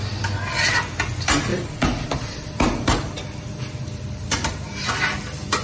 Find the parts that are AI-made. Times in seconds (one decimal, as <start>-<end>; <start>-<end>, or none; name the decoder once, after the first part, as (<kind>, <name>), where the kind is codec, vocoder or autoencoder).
1.5-4.9 (vocoder, BigVGAN v2)